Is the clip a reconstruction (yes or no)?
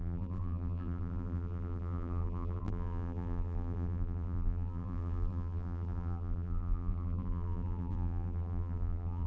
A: yes